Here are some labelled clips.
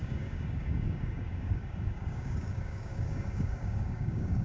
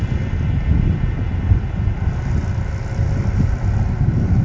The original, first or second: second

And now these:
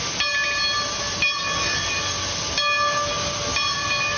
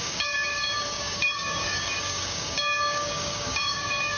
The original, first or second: first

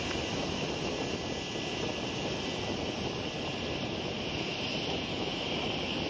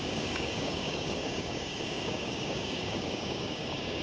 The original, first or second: first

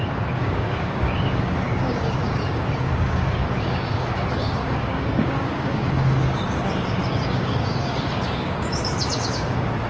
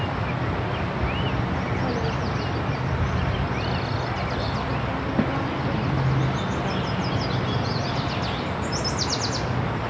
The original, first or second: second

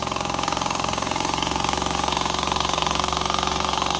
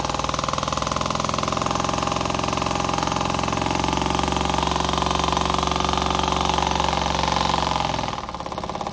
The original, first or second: second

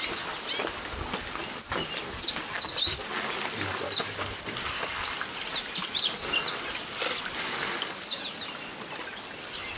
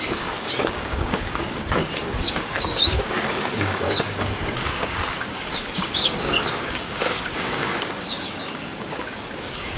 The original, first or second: first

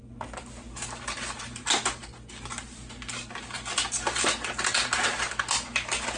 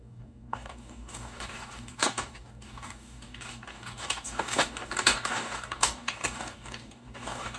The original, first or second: first